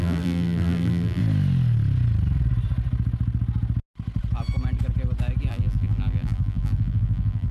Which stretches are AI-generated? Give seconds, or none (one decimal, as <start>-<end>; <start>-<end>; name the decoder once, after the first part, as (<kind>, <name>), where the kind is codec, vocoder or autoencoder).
0.0-1.2 (vocoder, BigVGAN v2); 5.5-7.5